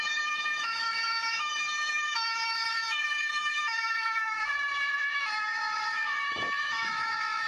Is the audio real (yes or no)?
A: no